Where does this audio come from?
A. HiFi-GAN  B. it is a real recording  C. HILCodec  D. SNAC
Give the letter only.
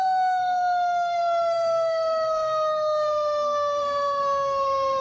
D